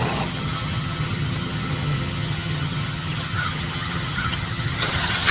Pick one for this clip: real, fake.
fake